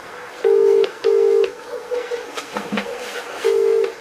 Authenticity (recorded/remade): remade